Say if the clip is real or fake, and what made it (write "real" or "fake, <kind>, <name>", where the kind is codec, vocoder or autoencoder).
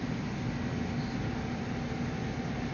real